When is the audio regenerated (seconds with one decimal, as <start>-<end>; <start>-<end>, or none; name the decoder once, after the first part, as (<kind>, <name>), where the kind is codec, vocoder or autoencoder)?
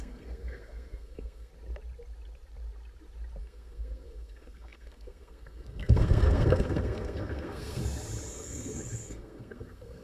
0.0-1.5 (codec, SNAC); 3.4-7.8; 8.3-10.0